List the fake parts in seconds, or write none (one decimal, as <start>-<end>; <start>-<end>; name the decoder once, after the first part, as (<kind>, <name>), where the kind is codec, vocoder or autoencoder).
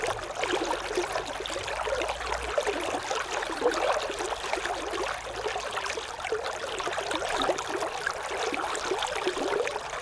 none